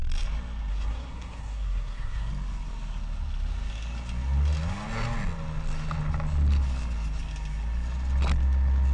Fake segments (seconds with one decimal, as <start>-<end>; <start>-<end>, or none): 0.7-2.3